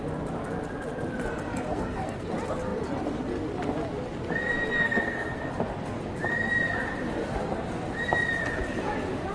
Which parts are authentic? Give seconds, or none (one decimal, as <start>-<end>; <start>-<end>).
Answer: 0.0-1.7; 2.3-4.7; 5.5-9.3